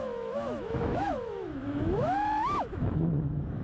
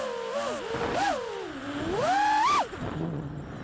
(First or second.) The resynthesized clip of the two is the first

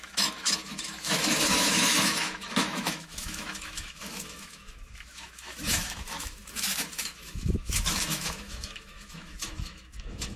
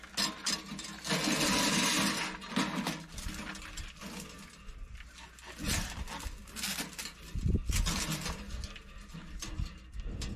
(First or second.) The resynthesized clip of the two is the first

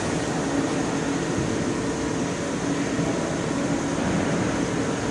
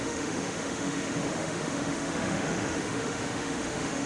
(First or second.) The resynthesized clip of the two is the second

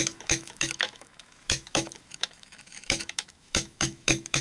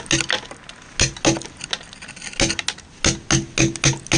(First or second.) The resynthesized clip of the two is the first